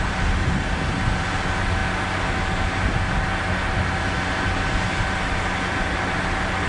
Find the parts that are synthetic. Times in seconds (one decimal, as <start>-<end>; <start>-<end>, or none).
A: none

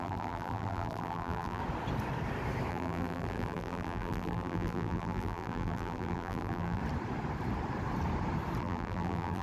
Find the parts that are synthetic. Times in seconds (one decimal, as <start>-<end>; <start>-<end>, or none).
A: 0.0-1.6; 2.7-6.8; 8.6-9.4

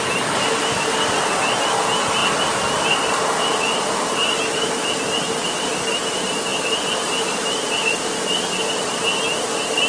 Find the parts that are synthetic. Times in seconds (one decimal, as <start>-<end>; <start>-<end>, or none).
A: none